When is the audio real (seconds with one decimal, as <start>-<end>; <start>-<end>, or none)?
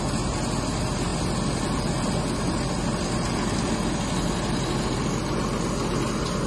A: 0.0-6.5